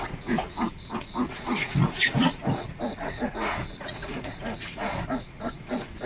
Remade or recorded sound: remade